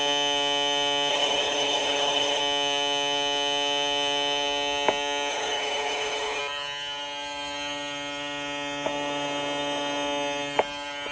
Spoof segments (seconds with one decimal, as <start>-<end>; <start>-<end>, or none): 1.1-2.4; 5.3-6.4